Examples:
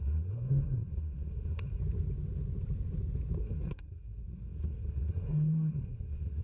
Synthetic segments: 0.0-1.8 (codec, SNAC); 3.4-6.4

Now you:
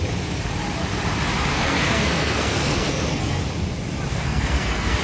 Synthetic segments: 1.5-3.4 (codec, SNAC); 4.1-5.0